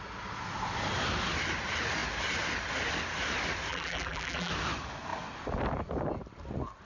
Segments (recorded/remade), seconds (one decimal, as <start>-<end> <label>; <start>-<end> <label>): 0.0-3.7 recorded; 3.7-4.5 remade; 4.5-6.9 recorded